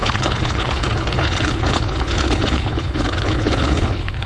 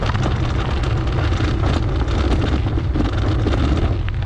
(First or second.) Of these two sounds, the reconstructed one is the first